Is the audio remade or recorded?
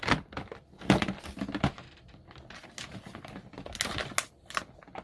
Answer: recorded